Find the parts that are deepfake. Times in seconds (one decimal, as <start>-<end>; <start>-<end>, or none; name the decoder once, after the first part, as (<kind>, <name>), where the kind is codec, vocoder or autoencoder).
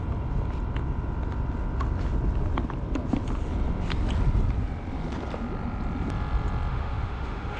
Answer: 6.7-7.6 (autoencoder, DAC-VAE)